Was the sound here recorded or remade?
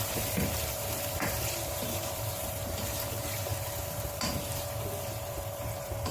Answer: remade